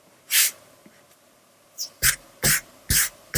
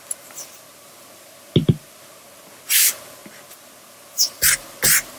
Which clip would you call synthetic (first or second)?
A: first